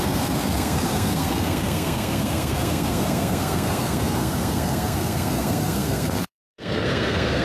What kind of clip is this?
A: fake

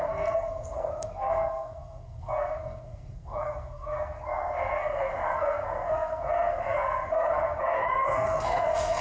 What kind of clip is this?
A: fake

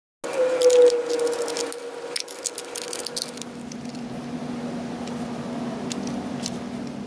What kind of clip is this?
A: real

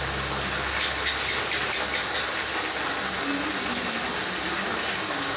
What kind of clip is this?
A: real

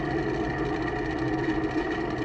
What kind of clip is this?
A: real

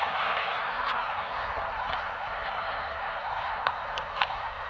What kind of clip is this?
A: fake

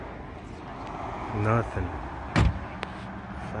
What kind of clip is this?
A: real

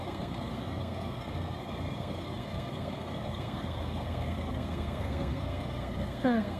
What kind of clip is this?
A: fake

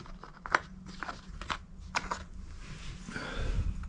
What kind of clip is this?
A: real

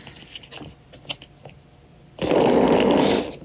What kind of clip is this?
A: real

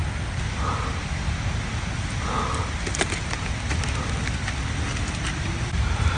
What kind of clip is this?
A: real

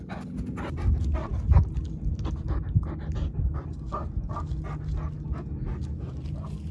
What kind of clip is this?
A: real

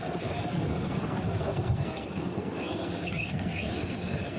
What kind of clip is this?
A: fake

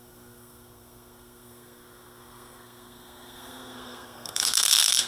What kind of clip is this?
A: fake